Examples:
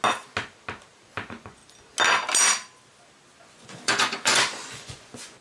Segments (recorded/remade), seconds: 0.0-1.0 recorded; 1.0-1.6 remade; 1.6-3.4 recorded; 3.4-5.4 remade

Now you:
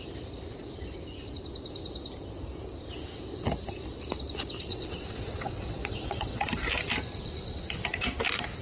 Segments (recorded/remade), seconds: 0.0-4.7 recorded; 4.7-6.4 remade; 6.4-8.6 recorded

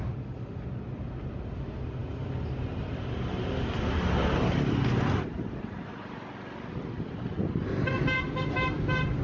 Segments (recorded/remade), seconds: 0.0-2.0 recorded; 2.0-4.8 remade; 4.8-9.2 recorded